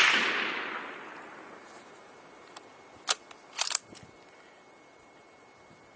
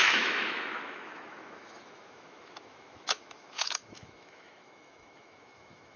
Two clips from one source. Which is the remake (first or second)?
second